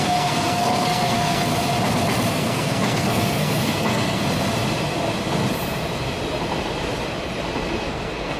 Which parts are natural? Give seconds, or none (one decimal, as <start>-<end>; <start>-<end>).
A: 1.5-2.3; 4.2-7.9